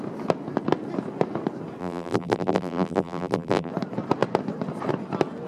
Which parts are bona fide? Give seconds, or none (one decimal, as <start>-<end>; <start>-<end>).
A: 0.0-1.8; 3.7-5.5